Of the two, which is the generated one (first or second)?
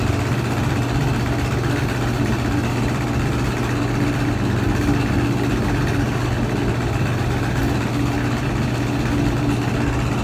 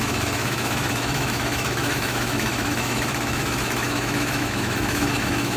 second